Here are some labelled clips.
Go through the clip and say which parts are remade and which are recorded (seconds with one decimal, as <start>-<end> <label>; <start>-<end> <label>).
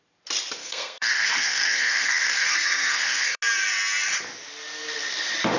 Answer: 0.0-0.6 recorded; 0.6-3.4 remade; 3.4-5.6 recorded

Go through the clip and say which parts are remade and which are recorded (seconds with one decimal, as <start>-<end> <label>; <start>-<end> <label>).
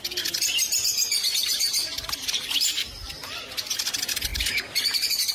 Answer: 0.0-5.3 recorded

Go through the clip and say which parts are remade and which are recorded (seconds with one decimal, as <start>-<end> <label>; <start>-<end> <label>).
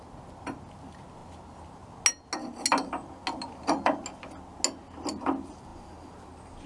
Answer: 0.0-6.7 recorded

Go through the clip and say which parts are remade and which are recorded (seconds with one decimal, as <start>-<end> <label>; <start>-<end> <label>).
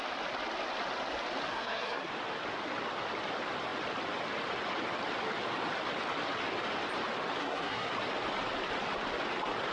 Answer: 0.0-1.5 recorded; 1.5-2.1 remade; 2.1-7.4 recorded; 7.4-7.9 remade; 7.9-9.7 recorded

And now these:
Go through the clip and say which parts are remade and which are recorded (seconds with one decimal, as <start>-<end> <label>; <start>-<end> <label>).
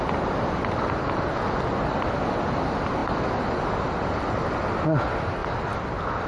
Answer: 0.0-6.3 recorded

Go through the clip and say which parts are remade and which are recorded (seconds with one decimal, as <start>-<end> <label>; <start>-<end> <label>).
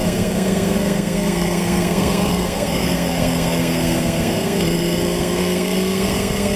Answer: 0.0-6.6 remade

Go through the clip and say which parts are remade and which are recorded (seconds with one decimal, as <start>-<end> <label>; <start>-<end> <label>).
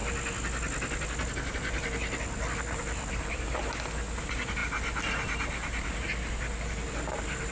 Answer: 0.0-7.5 recorded